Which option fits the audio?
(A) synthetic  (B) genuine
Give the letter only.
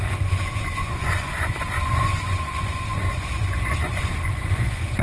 A